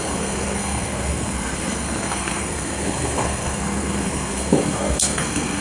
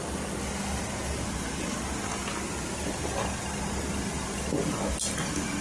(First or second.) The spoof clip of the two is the first